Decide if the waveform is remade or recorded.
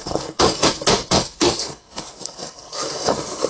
remade